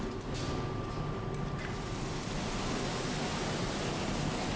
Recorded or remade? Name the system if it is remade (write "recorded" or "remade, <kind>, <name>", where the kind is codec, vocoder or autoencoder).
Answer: recorded